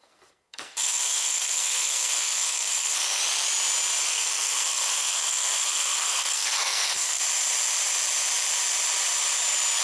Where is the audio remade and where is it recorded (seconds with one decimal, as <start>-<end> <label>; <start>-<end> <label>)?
0.0-3.2 remade; 3.2-4.0 recorded; 4.0-7.2 remade; 7.2-9.8 recorded

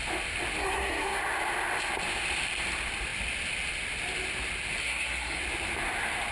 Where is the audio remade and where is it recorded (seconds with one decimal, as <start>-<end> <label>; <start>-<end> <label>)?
0.0-0.6 recorded; 0.6-1.2 remade; 1.2-4.8 recorded; 4.8-5.4 remade; 5.4-6.3 recorded

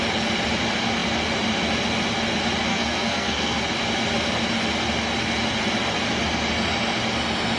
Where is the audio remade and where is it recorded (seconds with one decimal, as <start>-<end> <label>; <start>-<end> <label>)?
0.0-2.7 recorded; 2.7-3.6 remade; 3.6-7.6 recorded

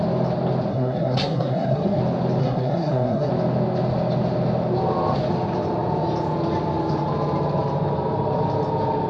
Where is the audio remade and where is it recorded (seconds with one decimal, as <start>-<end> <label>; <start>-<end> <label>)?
0.0-0.7 recorded; 0.7-2.0 remade; 2.0-2.4 recorded; 2.4-3.3 remade; 3.3-9.1 recorded

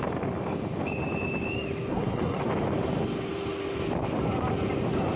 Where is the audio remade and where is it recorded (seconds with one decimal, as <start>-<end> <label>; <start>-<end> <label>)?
0.0-1.9 recorded; 1.9-2.4 remade; 2.4-5.2 recorded

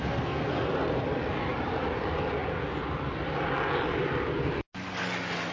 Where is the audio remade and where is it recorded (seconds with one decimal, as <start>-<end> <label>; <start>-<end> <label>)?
0.0-0.7 remade; 0.7-5.5 recorded

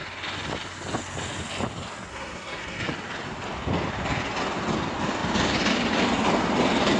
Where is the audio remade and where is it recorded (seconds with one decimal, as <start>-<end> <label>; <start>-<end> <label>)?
0.0-2.1 recorded; 2.1-2.9 remade; 2.9-7.0 recorded